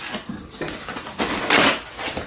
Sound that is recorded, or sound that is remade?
recorded